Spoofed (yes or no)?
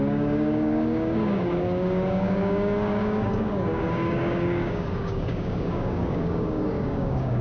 yes